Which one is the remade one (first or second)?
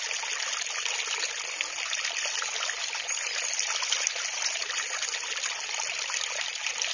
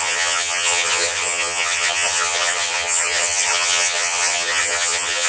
second